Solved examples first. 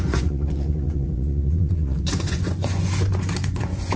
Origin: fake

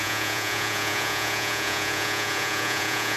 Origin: fake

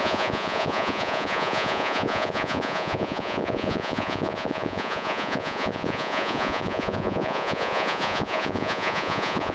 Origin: fake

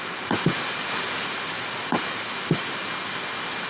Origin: real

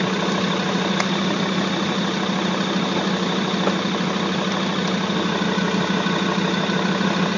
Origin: real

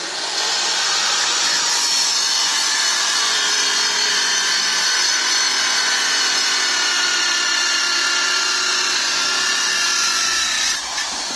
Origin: fake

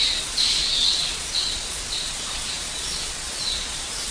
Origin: fake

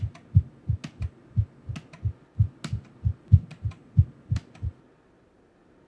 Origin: real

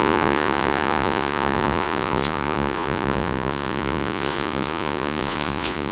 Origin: fake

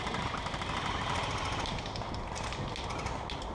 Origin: real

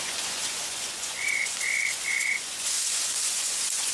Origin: fake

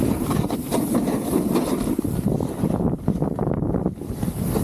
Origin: real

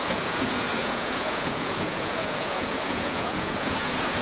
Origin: fake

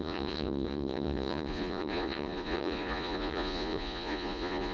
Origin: fake